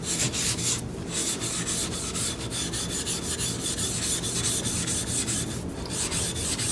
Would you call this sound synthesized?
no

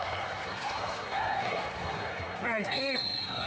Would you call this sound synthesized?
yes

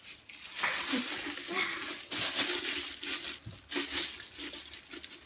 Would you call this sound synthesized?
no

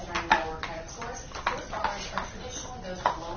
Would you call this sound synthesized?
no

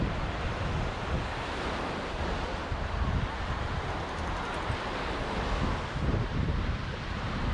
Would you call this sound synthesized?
no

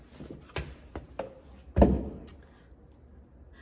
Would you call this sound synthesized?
no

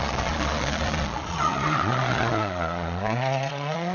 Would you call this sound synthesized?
yes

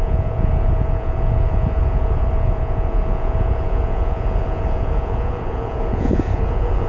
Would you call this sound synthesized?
yes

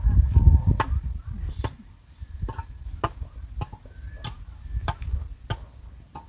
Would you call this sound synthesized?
no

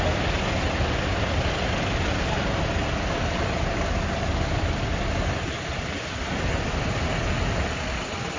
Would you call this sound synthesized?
no